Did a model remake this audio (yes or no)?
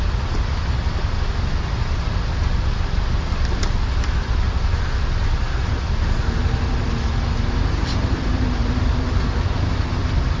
no